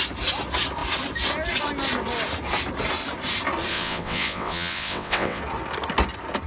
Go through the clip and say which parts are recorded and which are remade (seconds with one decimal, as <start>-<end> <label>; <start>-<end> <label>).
0.0-3.7 recorded; 3.7-5.4 remade; 5.4-6.5 recorded

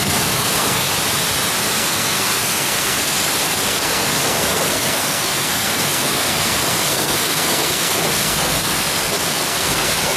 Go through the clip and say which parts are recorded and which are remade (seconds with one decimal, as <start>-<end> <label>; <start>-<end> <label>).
0.0-0.9 remade; 0.9-1.6 recorded; 1.6-10.2 remade

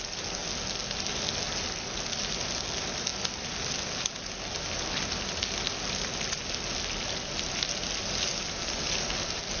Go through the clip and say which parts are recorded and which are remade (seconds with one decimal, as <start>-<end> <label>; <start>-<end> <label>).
0.0-9.6 recorded

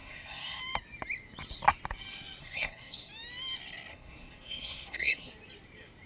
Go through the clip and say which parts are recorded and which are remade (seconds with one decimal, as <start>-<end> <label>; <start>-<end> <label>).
0.0-0.6 remade; 0.6-2.4 recorded; 2.4-3.1 remade; 3.1-3.9 recorded; 3.9-5.3 remade; 5.3-6.1 recorded

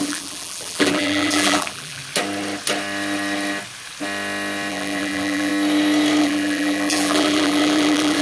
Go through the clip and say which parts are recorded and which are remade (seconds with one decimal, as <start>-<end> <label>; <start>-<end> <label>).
0.0-2.0 remade; 2.0-4.7 recorded; 4.7-5.5 remade; 5.5-6.2 recorded; 6.2-8.2 remade

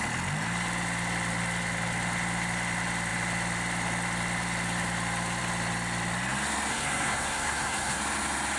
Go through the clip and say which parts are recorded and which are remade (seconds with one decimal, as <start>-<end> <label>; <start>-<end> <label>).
0.0-6.7 recorded; 6.7-8.0 remade; 8.0-8.6 recorded